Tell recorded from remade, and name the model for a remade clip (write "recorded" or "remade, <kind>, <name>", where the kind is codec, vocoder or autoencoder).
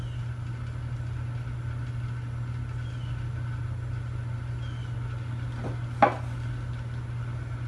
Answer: recorded